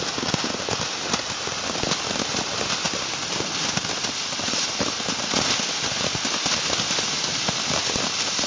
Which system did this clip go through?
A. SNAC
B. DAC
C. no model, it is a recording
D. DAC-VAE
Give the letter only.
C